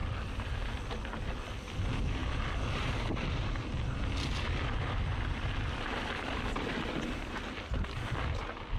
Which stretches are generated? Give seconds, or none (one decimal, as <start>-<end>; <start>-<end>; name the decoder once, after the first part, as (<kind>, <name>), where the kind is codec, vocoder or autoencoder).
none